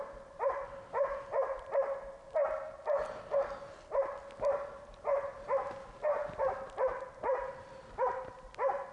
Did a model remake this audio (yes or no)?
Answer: no